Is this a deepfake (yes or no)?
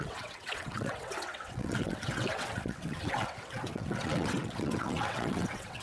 yes